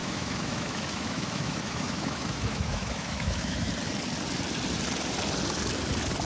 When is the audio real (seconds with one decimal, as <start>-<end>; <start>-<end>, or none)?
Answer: 3.7-6.2